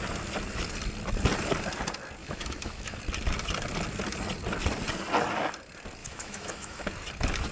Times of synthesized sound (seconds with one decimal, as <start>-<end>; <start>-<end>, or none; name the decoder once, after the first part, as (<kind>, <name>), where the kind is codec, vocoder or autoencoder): 2.2-3.0 (autoencoder, DAC-VAE); 6.0-6.9